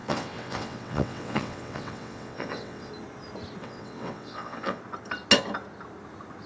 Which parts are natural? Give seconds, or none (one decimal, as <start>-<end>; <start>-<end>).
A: 2.9-3.6; 4.8-6.5